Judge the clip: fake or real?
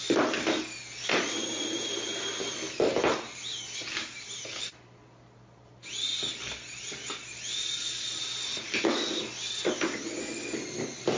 real